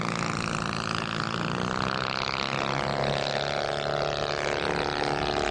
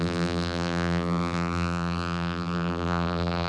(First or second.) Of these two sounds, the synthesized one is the second